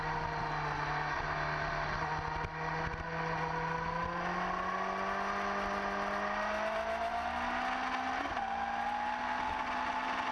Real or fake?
real